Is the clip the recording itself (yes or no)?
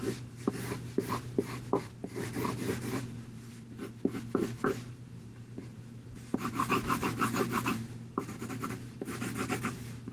no